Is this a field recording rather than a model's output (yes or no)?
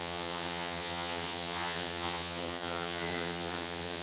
no